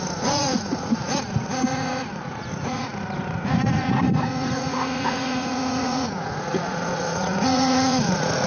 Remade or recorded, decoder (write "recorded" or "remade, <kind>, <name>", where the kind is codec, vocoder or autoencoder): remade, vocoder, Vocos